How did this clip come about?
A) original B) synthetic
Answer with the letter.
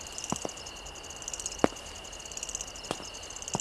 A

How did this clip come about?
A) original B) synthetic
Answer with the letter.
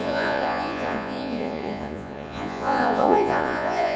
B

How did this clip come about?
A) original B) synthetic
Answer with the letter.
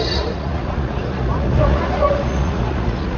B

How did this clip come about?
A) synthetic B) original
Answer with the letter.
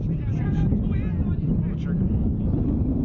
B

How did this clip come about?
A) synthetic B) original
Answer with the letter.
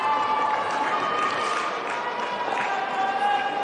B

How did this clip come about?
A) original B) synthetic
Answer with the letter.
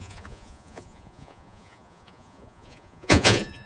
B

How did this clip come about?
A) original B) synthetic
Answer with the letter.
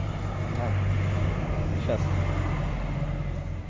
A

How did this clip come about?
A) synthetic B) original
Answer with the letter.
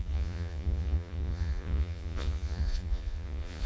A